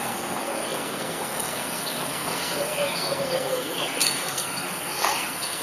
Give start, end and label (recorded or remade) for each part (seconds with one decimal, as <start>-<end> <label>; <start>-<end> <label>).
0.0-5.6 remade